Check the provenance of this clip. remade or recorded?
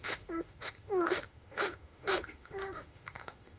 remade